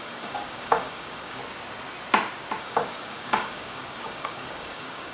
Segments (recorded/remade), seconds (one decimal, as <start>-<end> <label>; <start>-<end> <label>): 0.0-1.4 remade; 1.4-2.6 recorded; 2.6-5.1 remade